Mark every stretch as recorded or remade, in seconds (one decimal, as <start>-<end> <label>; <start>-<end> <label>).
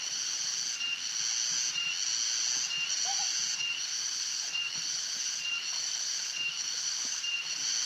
0.0-0.5 remade; 0.5-2.9 recorded; 2.9-7.9 remade